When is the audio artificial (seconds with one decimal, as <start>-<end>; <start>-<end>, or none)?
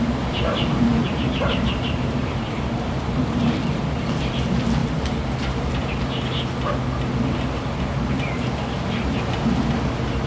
0.9-3.2; 4.8-5.7; 7.9-8.6